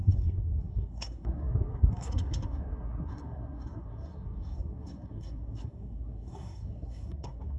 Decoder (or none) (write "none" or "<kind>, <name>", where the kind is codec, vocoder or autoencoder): codec, SNAC